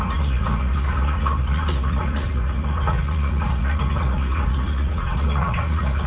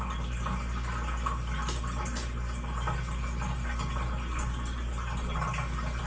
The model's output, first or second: first